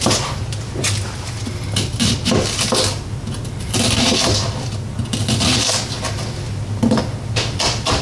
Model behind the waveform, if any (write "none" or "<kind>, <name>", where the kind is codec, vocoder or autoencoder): none